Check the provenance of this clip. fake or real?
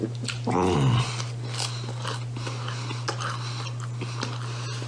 real